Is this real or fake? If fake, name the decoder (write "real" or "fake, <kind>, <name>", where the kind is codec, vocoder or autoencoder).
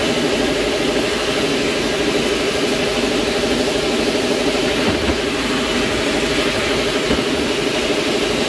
real